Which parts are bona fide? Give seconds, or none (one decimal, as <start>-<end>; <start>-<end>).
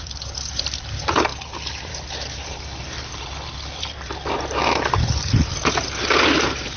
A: none